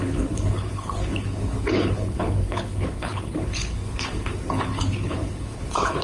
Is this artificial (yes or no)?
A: yes